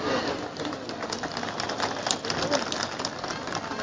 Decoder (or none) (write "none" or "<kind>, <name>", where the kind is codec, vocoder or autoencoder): none